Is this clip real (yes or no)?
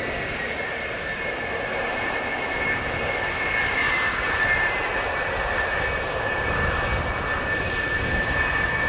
yes